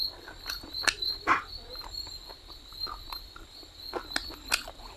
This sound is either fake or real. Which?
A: real